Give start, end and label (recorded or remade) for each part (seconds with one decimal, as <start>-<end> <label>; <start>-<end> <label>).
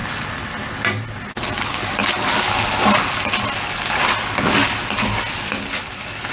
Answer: 0.0-6.3 recorded